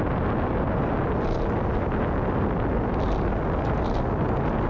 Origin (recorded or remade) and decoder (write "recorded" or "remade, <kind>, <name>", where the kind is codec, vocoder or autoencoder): recorded